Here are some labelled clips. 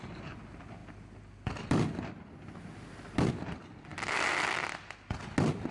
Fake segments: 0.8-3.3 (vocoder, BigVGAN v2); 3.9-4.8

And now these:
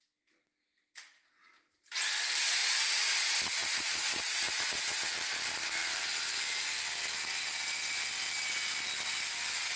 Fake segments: 2.6-7.2 (vocoder, BigVGAN v2)

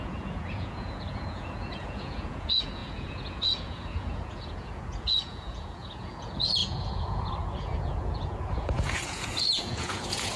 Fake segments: 0.0-10.4 (vocoder, Vocos)

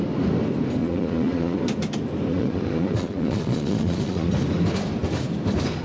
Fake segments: 0.8-1.6 (vocoder, Vocos); 2.3-4.3

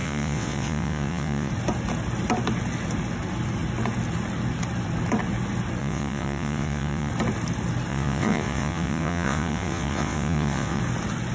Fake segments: 0.0-1.5 (vocoder, WaveNeXt); 5.8-7.1; 7.9-10.8

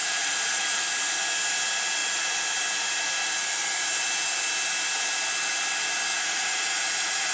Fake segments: 0.0-0.9 (vocoder, Vocos); 6.1-7.3